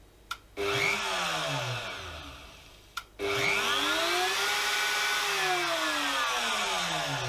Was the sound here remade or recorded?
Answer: recorded